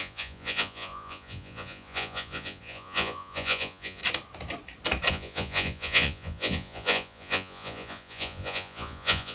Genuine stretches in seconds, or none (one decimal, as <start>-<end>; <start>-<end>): 4.0-5.1